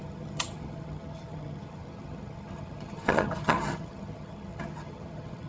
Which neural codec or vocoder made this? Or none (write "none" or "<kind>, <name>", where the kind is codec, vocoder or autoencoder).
vocoder, HiFi-GAN